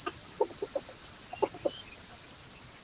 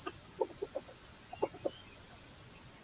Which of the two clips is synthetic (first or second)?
second